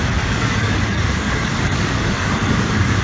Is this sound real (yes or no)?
no